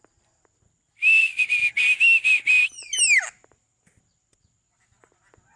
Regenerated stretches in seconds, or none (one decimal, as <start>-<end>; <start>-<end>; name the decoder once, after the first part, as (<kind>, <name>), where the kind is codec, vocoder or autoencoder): none